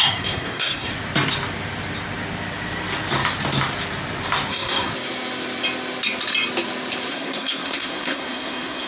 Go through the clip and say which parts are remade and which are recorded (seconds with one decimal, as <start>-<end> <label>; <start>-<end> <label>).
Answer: 0.0-0.9 remade; 0.9-4.5 recorded; 4.5-4.9 remade; 4.9-7.1 recorded; 7.1-8.9 remade